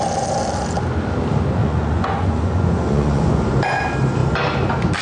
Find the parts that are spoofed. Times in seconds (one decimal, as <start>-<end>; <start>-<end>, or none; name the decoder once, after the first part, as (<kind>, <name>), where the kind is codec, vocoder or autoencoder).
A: 1.6-3.4 (vocoder, Vocos)